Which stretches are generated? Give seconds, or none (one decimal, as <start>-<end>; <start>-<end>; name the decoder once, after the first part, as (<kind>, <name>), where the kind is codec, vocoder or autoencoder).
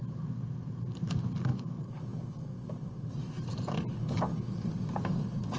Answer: 1.5-3.1 (codec, DAC); 4.0-4.7